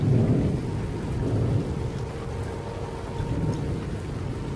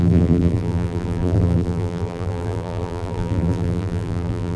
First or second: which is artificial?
second